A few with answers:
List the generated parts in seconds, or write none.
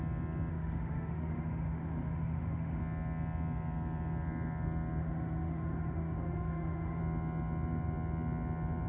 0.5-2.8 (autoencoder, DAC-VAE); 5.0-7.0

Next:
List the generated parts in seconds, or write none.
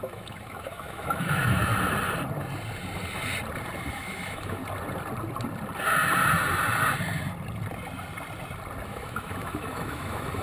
0.0-1.7 (autoencoder, DAC-VAE); 3.9-4.6; 8.9-10.4